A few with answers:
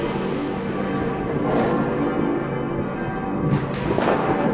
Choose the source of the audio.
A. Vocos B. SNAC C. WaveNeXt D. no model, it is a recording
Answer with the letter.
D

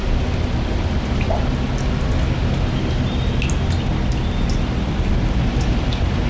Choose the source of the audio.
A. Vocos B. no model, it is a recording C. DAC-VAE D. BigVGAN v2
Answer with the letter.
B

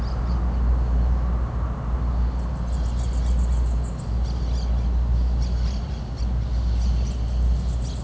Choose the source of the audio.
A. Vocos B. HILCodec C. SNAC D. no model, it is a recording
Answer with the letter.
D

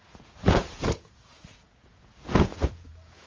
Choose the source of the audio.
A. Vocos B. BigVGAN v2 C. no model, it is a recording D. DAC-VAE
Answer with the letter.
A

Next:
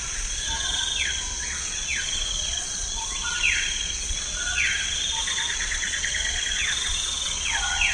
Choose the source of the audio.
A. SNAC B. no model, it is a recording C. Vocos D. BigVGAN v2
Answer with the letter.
C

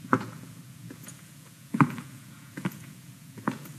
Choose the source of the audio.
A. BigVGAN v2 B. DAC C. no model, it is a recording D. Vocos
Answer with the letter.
D